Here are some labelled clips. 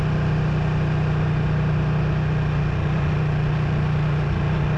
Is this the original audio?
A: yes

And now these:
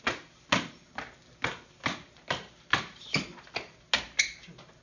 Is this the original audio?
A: yes